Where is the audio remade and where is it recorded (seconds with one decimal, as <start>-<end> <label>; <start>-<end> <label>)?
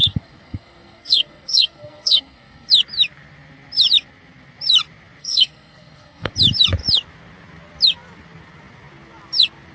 0.0-2.7 remade; 2.7-5.2 recorded; 5.2-6.3 remade; 6.3-9.7 recorded